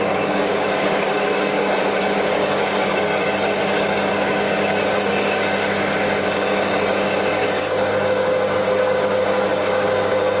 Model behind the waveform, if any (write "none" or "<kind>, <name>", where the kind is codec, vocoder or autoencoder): codec, DAC